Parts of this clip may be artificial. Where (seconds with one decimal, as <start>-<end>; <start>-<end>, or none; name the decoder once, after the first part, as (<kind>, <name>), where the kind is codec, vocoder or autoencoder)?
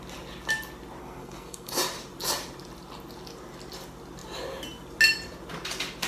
1.0-1.7 (codec, SNAC)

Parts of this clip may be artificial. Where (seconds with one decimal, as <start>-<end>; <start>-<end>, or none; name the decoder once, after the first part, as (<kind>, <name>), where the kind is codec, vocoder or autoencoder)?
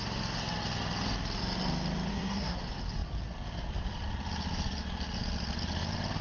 2.1-2.6 (codec, SNAC)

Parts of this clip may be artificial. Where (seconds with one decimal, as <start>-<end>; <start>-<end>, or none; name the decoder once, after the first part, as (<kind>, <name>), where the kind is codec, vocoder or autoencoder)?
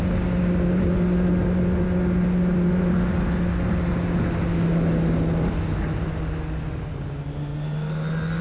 none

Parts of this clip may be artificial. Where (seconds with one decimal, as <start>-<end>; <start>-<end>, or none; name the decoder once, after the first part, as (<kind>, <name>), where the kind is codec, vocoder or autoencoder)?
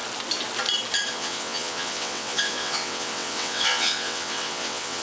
1.1-5.0 (vocoder, WaveNeXt)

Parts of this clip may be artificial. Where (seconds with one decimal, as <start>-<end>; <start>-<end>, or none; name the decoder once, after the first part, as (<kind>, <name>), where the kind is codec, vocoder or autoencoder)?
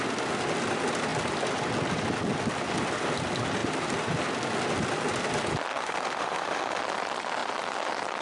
5.7-6.8 (autoencoder, DAC-VAE)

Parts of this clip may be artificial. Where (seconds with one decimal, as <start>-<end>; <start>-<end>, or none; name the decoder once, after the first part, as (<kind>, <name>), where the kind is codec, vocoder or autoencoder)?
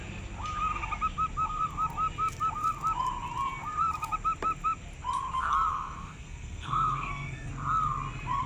5.7-7.5 (codec, SNAC)